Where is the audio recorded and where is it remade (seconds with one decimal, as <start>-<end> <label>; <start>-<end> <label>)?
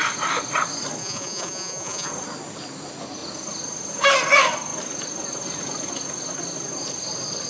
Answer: 0.0-1.0 recorded; 1.0-2.1 remade; 2.1-7.5 recorded